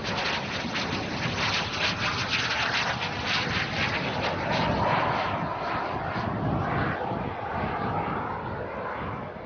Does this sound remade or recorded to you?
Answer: recorded